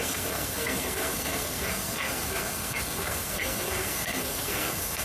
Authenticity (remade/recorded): remade